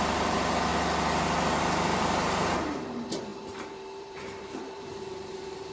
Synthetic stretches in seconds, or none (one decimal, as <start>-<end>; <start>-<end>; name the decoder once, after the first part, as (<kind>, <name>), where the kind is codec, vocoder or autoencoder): 0.0-0.7 (vocoder, BigVGAN v2); 1.6-5.7